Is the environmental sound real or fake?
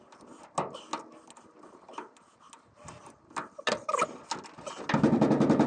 real